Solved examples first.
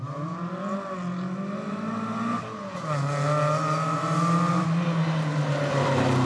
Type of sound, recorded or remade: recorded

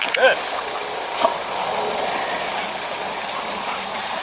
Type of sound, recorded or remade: recorded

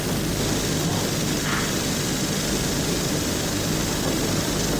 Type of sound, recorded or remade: recorded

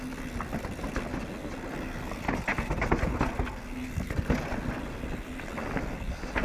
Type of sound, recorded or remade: recorded